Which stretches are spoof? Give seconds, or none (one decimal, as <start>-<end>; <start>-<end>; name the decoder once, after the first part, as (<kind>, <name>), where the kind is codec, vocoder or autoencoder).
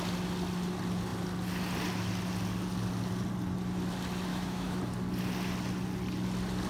4.3-4.8 (autoencoder, DAC-VAE)